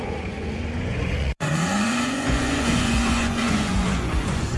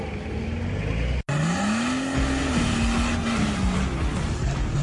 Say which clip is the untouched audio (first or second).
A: second